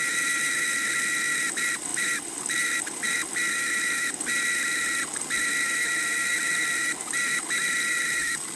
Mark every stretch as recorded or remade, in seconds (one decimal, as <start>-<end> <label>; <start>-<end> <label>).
0.0-1.9 recorded; 1.9-2.8 remade; 2.8-8.6 recorded